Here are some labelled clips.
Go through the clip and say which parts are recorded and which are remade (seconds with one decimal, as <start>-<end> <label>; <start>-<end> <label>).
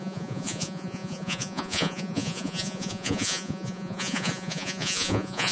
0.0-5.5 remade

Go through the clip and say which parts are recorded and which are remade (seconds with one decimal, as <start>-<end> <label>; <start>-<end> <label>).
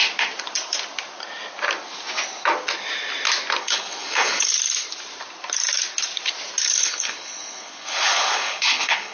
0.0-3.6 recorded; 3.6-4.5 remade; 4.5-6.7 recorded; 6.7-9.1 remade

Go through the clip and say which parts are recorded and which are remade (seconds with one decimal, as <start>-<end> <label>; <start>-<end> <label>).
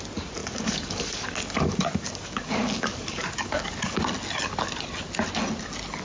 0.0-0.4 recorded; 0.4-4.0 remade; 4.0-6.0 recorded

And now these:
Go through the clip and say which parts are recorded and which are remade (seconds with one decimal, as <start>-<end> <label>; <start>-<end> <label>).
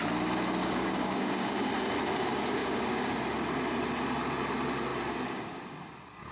0.0-0.6 recorded; 0.6-1.7 remade; 1.7-2.6 recorded; 2.6-3.1 remade; 3.1-6.3 recorded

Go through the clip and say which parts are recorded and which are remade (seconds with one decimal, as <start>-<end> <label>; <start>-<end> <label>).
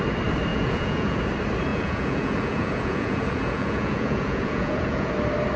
0.0-0.5 recorded; 0.5-1.2 remade; 1.2-1.7 recorded; 1.7-5.1 remade; 5.1-5.6 recorded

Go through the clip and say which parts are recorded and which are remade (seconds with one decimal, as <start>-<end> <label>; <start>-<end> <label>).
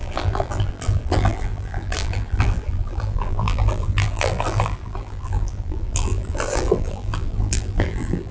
0.0-8.3 remade